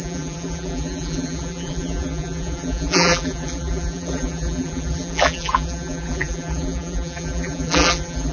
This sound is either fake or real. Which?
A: fake